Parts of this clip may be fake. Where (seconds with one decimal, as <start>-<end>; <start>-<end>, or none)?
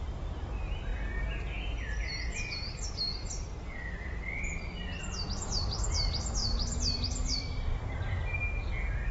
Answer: 6.4-8.7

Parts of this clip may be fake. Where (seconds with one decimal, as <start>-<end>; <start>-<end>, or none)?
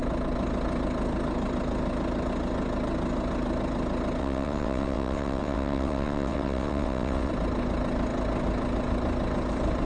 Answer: 4.2-7.3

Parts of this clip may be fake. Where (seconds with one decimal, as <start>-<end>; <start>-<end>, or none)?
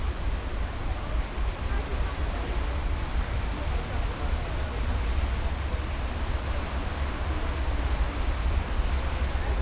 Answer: none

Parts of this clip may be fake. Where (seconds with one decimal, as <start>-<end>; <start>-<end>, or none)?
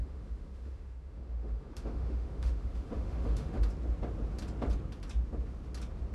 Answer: 0.0-3.6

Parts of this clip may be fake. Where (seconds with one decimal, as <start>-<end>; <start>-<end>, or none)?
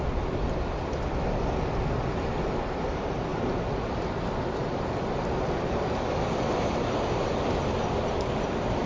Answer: none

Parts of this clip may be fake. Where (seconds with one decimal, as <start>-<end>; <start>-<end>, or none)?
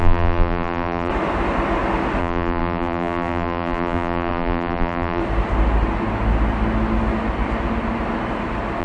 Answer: 0.0-1.1; 2.2-5.2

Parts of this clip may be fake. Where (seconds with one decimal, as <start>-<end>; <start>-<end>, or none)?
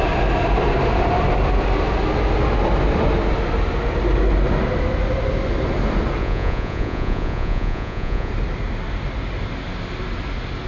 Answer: 6.2-8.3